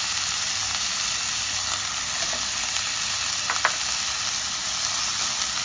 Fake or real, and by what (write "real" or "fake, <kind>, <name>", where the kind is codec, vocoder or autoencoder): real